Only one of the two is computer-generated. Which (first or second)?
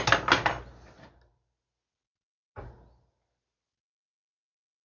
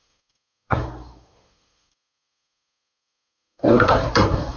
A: second